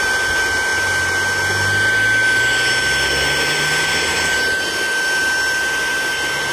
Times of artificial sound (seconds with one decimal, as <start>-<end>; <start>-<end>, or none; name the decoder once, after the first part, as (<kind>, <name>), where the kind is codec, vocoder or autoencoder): none